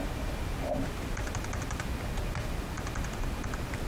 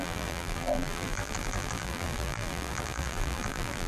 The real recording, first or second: first